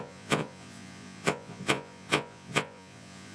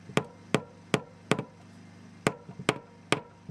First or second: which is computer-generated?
first